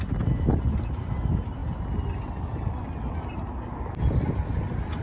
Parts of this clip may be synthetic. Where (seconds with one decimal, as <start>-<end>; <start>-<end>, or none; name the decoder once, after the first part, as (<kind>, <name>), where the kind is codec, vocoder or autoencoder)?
none